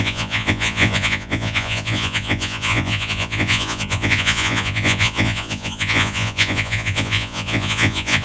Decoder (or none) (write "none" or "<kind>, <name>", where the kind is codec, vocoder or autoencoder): vocoder, Vocos